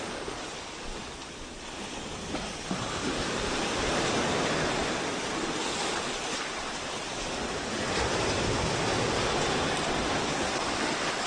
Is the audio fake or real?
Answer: real